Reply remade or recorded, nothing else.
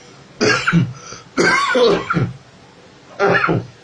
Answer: recorded